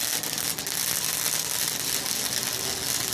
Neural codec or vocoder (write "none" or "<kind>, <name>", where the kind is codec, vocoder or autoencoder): none